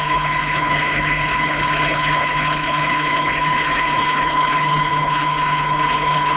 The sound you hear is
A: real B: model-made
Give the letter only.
B